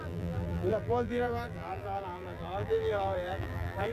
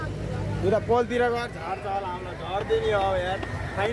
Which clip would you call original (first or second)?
second